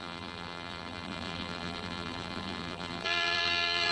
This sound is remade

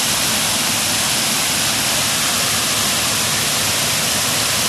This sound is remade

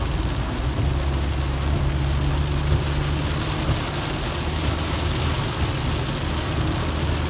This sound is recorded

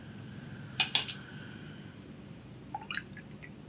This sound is recorded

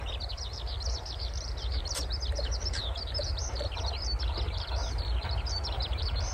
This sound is remade